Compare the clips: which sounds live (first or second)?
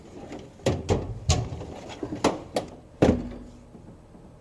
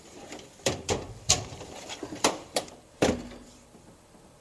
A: first